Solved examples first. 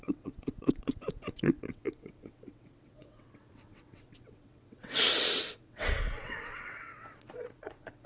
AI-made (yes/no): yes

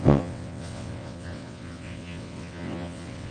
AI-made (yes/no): yes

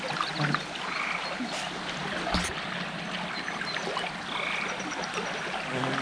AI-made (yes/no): no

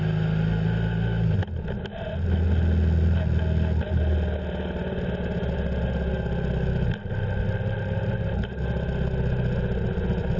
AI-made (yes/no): no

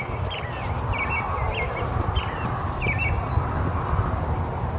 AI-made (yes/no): no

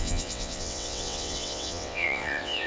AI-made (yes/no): yes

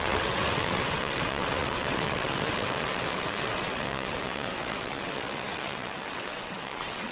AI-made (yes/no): yes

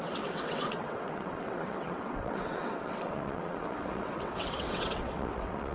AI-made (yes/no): yes